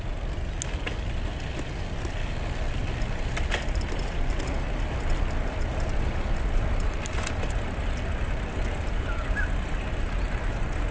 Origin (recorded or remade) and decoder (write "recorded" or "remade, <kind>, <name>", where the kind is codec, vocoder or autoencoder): recorded